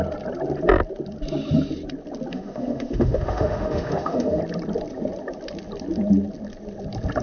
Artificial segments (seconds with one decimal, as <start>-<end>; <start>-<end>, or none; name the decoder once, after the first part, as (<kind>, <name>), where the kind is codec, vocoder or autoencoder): 2.3-4.4 (autoencoder, DAC-VAE)